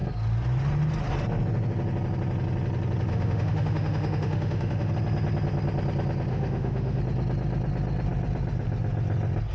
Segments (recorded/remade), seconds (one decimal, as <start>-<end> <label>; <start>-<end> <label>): 0.0-3.1 recorded; 3.1-4.9 remade; 4.9-6.3 recorded; 6.3-7.0 remade; 7.0-9.5 recorded